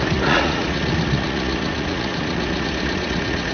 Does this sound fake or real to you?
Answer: fake